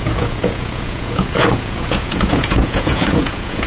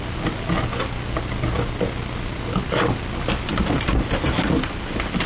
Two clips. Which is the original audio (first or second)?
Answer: second